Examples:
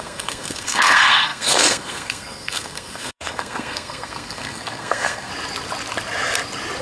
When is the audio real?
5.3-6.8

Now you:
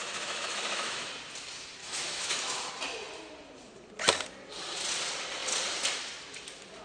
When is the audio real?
1.1-1.8; 2.7-6.8

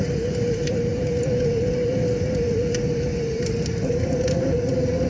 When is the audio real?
0.0-5.1

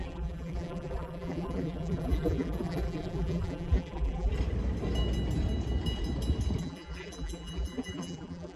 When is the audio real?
4.3-6.6

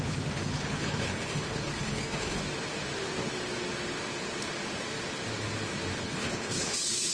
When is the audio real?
2.4-6.0